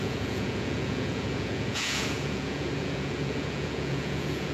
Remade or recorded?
remade